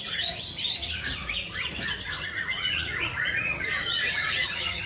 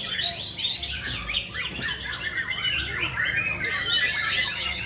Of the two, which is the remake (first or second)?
first